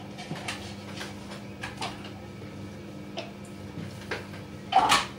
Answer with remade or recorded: recorded